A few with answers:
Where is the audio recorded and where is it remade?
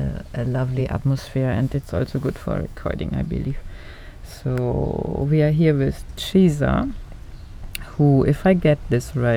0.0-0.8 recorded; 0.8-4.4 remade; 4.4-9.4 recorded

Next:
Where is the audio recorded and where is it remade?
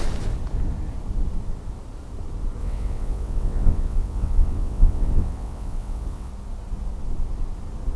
0.0-2.6 recorded; 2.6-6.3 remade; 6.3-8.0 recorded